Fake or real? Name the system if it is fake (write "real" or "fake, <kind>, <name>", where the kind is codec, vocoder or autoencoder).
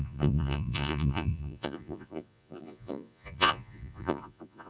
fake, vocoder, Vocos